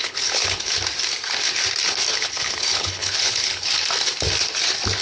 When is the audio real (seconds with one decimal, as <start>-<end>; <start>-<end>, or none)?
0.7-2.1; 3.7-5.0